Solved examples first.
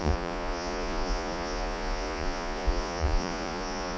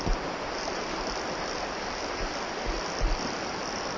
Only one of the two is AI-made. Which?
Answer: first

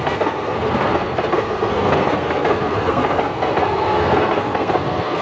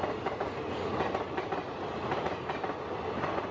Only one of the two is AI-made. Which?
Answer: first